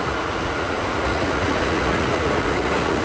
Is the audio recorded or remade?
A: remade